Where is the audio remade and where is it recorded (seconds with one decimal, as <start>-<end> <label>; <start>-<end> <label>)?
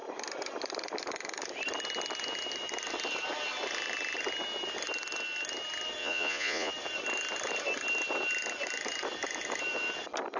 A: 0.0-6.0 recorded; 6.0-6.7 remade; 6.7-10.4 recorded